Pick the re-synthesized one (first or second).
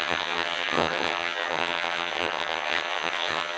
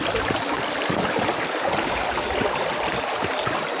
first